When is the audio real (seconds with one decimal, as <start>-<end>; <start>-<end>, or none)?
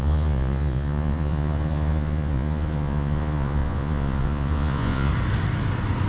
5.1-6.1